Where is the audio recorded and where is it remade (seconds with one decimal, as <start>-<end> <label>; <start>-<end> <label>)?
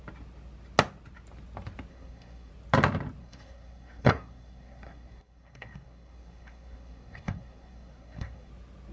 0.0-1.9 recorded; 1.9-2.5 remade; 2.5-3.2 recorded; 3.2-8.5 remade; 8.5-8.9 recorded